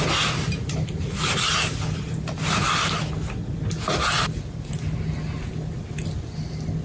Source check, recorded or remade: recorded